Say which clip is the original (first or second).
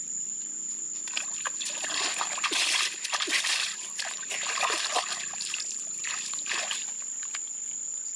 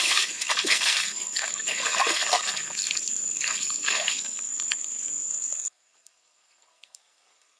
first